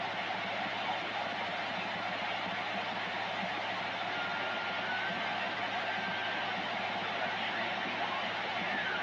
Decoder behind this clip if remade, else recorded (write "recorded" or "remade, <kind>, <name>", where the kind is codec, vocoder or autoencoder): recorded